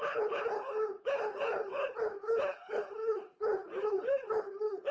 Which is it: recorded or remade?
remade